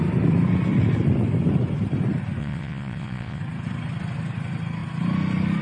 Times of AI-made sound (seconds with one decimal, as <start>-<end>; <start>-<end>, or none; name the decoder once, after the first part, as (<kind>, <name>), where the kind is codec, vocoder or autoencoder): 2.4-3.4 (vocoder, Vocos)